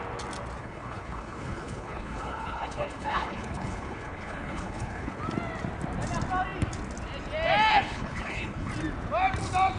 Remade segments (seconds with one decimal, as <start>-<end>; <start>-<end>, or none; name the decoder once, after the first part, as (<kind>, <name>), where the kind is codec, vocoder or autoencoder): 0.6-5.2 (codec, HILCodec); 7.7-8.7